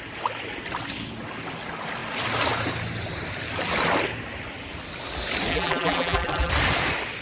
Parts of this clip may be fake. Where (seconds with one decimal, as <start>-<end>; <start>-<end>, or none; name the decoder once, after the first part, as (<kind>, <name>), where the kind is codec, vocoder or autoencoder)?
5.5-6.5 (vocoder, BigVGAN v2)